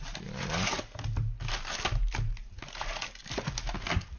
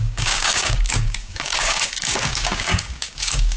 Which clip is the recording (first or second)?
first